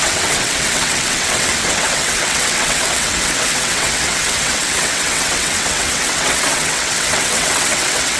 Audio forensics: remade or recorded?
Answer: remade